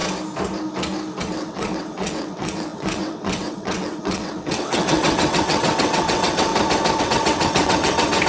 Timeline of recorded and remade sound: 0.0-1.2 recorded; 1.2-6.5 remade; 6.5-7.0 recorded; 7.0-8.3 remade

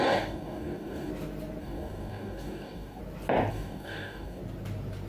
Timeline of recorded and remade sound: 0.0-1.1 remade; 1.1-1.6 recorded; 1.6-3.0 remade; 3.0-3.5 recorded; 3.5-4.4 remade; 4.4-5.1 recorded

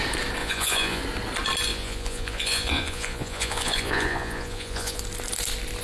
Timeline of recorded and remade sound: 0.0-0.4 recorded; 0.4-1.0 remade; 1.0-1.7 recorded; 1.7-5.0 remade; 5.0-5.8 recorded

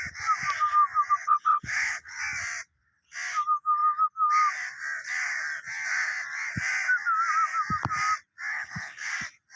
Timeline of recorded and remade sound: 0.0-1.2 recorded; 1.2-2.2 remade; 2.2-8.5 recorded; 8.5-9.1 remade; 9.1-9.6 recorded

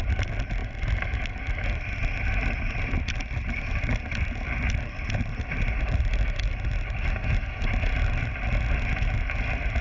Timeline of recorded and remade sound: 0.0-9.8 recorded

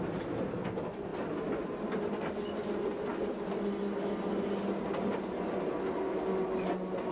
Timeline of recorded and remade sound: 0.0-7.1 recorded